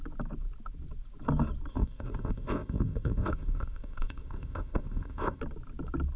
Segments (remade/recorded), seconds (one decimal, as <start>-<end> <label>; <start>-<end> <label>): 0.0-1.7 recorded; 1.7-5.4 remade; 5.4-6.2 recorded